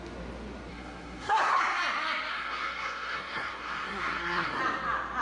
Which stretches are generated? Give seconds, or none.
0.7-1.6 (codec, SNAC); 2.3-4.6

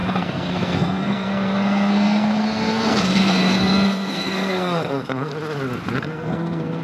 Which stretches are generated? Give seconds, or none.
0.0-5.3 (codec, SNAC); 6.0-6.8

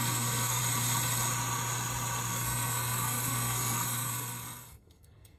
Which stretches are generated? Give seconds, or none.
0.0-0.6 (codec, SNAC); 2.3-5.4